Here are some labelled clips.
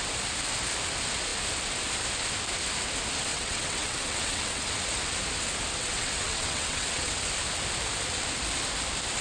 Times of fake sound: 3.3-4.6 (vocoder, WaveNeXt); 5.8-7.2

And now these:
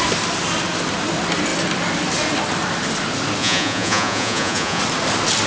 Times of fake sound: 3.4-4.8 (vocoder, Vocos)

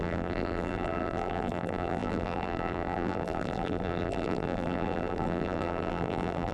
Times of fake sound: 0.0-6.5 (vocoder, BigVGAN v2)

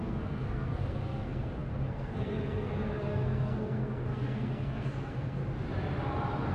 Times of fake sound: 0.0-5.4 (codec, SNAC)